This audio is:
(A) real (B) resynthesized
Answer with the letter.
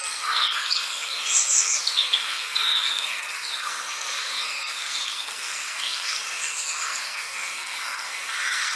B